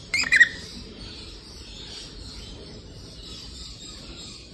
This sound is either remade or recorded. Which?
remade